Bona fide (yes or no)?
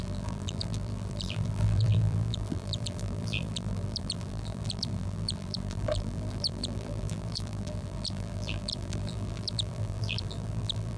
no